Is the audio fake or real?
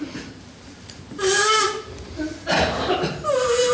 fake